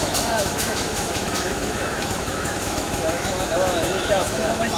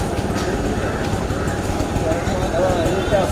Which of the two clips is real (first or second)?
second